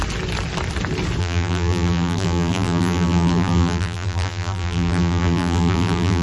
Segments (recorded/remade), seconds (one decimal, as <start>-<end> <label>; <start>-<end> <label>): 0.0-1.2 recorded; 1.2-6.2 remade